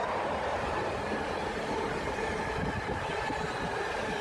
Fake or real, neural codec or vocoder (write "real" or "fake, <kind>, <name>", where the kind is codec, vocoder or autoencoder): real